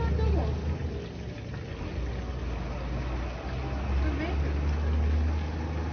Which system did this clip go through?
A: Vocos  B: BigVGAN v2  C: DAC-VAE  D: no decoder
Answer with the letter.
D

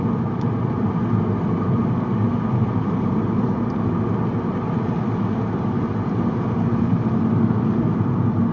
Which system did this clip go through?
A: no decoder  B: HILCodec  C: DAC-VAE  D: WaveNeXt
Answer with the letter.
A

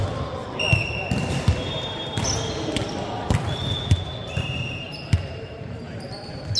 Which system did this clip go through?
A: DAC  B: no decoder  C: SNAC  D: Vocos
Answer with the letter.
B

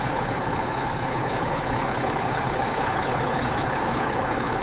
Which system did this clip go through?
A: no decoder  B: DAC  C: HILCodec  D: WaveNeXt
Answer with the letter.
C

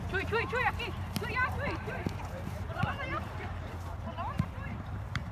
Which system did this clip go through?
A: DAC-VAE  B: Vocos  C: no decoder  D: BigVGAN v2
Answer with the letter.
D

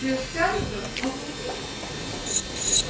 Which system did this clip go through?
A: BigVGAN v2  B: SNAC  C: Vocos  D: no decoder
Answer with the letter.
D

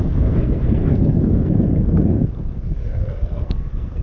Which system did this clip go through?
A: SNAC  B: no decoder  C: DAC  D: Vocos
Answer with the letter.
A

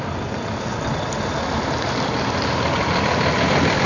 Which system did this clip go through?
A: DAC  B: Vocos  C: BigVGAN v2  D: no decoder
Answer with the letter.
D